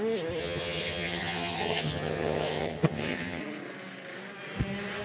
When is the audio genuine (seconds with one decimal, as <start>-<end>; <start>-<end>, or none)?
0.0-0.4; 3.4-5.0